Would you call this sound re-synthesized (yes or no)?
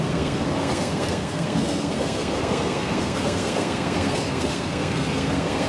yes